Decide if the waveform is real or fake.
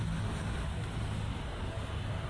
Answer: real